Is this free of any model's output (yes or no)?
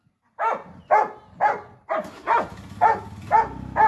yes